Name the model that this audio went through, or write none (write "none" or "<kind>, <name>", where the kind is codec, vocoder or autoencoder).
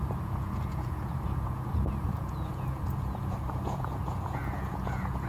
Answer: vocoder, Vocos